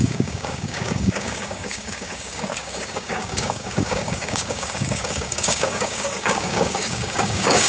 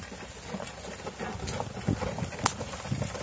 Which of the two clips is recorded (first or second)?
second